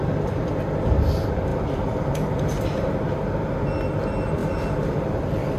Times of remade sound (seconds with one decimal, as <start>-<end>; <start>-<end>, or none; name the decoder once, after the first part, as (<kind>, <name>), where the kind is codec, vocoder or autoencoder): 1.5-2.9 (vocoder, BigVGAN v2); 4.4-5.6